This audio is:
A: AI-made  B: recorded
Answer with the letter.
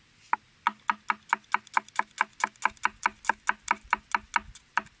B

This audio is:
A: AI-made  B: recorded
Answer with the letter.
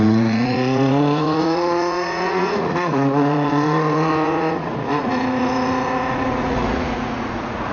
A